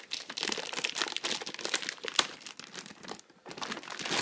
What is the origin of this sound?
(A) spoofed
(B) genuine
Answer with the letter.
B